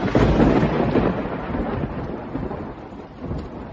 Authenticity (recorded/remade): recorded